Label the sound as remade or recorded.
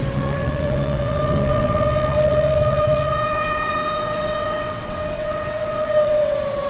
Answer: remade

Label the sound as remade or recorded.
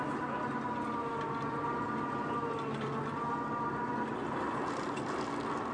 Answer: recorded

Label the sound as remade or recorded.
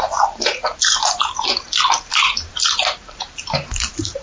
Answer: remade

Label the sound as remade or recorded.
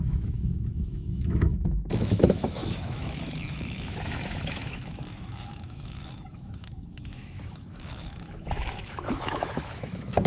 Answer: remade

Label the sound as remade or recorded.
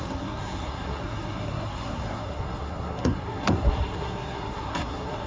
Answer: remade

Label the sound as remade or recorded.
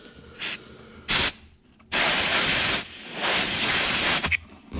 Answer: recorded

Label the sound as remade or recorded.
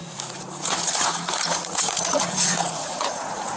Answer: remade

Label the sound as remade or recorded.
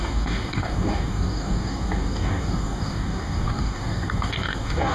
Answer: remade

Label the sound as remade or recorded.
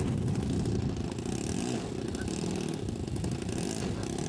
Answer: recorded